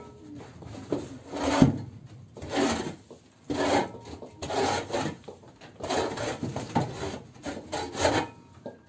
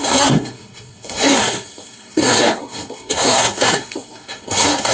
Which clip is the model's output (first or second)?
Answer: second